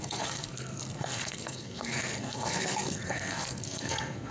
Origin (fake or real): fake